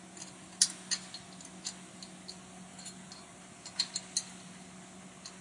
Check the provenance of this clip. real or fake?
real